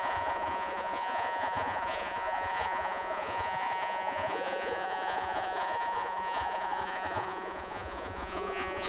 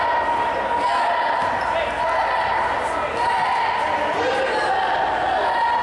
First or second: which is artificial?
first